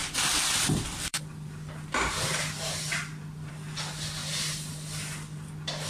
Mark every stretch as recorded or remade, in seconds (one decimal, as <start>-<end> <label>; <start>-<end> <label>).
0.0-3.5 remade; 3.5-4.2 recorded; 4.2-5.5 remade; 5.5-5.9 recorded